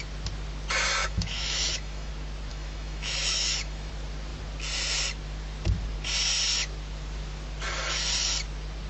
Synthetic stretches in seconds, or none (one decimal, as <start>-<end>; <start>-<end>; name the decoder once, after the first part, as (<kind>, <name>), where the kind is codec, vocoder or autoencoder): 1.0-2.1 (autoencoder, DAC-VAE); 2.5-3.9